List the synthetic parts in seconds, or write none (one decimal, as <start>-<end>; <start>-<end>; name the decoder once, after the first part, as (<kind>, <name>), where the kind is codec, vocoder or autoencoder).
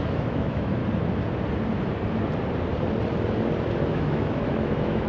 0.0-0.8 (autoencoder, DAC-VAE); 3.9-5.1